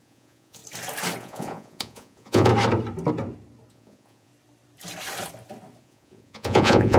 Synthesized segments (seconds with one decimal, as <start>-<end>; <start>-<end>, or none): 0.0-0.6; 1.2-2.5; 3.7-4.3; 5.8-7.0